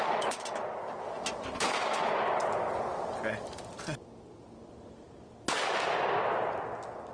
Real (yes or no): yes